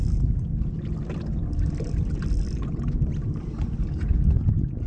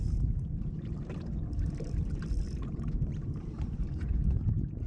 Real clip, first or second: first